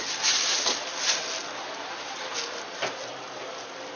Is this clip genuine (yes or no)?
yes